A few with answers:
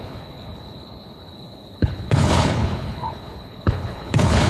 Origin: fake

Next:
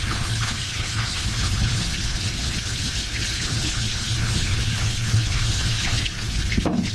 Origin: fake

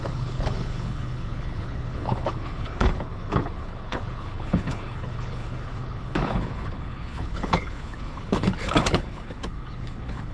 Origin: fake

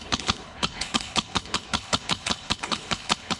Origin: fake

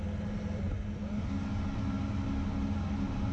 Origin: real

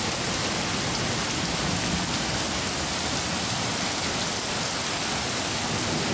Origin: real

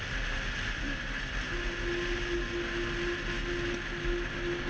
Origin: real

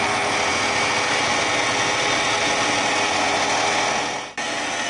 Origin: real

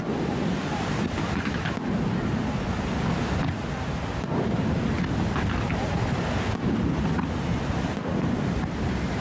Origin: real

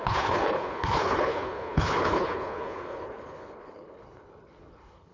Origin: fake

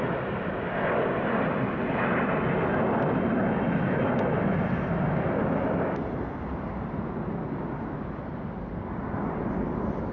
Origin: real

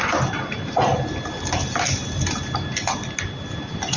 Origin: real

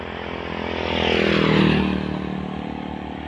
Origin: real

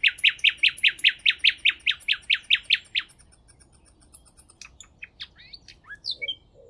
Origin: real